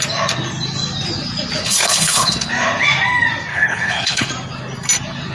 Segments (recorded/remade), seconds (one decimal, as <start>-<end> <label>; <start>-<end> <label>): 0.0-1.6 recorded; 1.6-2.5 remade; 2.5-3.5 recorded; 3.5-4.3 remade; 4.3-5.3 recorded